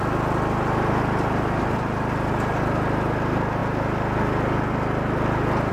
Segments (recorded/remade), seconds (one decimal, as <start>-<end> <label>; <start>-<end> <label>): 0.0-5.7 recorded